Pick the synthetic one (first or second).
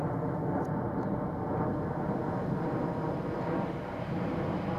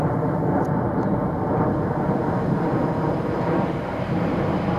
second